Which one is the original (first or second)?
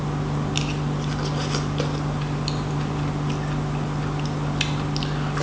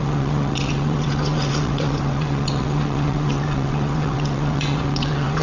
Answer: first